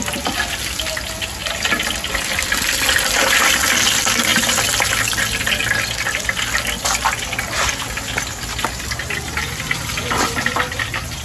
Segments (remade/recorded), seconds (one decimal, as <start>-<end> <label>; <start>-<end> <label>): 0.0-11.2 recorded